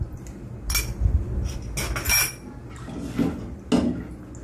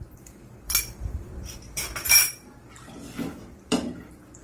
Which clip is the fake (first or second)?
second